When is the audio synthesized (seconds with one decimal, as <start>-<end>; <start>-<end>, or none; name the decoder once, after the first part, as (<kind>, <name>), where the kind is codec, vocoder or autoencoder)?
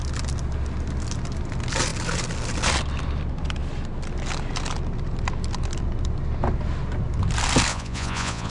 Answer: 7.7-8.5 (vocoder, Vocos)